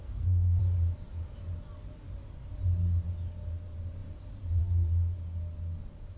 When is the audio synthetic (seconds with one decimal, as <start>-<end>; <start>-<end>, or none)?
0.0-0.6